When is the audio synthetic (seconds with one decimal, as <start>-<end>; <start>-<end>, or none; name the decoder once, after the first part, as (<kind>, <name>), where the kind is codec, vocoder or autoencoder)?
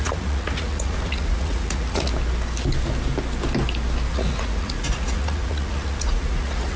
0.0-2.1 (vocoder, Vocos); 4.1-6.8